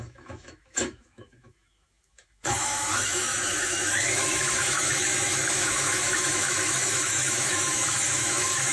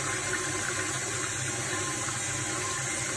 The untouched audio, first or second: second